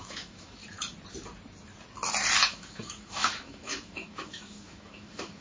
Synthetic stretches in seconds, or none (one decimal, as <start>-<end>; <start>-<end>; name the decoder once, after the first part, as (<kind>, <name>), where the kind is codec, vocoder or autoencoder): 0.0-0.6 (autoencoder, DAC-VAE); 2.4-5.4